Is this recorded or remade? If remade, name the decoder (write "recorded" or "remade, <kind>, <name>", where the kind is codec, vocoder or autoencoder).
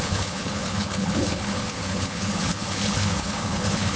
remade, codec, HILCodec